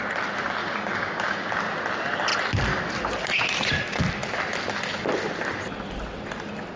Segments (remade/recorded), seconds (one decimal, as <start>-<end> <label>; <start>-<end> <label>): 0.0-0.6 recorded; 0.6-1.5 remade; 1.5-6.8 recorded